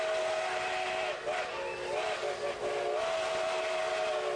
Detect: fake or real real